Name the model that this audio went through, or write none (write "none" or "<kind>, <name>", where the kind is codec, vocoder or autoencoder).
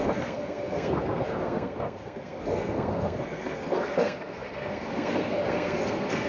codec, SNAC